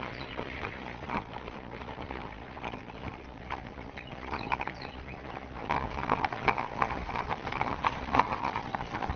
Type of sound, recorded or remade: remade